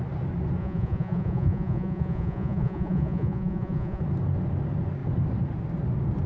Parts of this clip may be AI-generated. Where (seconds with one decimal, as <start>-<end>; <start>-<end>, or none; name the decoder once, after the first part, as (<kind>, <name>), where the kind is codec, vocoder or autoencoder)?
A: 0.6-4.0 (vocoder, Vocos)